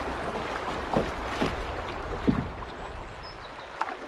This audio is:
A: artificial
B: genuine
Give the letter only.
B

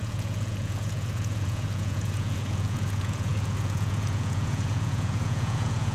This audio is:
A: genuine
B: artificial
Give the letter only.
B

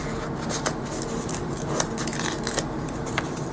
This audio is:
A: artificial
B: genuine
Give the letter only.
B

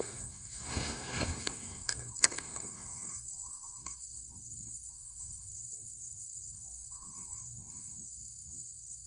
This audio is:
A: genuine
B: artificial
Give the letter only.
B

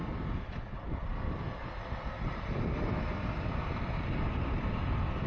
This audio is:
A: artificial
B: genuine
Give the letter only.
B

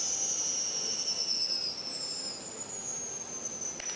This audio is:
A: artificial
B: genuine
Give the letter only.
B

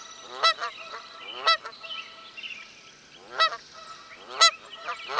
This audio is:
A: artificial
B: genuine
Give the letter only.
B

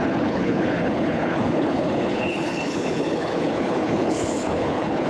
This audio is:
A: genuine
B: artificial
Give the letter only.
B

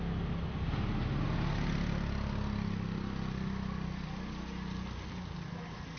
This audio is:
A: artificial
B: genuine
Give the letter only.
B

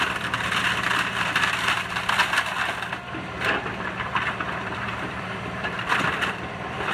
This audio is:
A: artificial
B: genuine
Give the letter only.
A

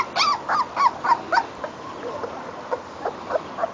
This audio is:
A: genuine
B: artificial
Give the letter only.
A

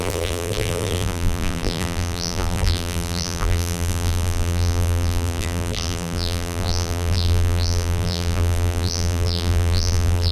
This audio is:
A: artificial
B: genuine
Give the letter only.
A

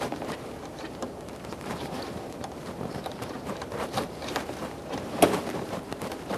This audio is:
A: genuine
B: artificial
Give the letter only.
B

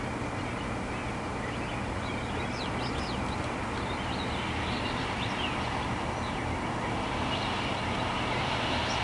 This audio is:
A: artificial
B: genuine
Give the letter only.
B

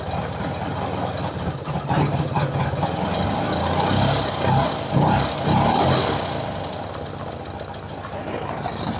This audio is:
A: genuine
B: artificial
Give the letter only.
A